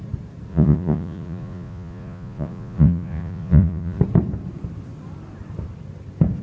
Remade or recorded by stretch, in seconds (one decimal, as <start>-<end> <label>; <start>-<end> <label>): 0.0-0.5 recorded; 0.5-4.0 remade; 4.0-6.4 recorded